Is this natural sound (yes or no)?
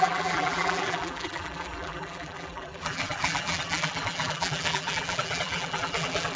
no